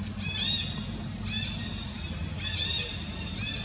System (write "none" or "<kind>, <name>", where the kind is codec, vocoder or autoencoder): none